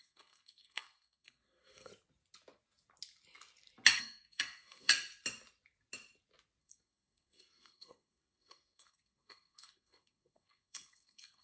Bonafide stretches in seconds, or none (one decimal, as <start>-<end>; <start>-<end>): 1.9-4.0; 4.9-6.6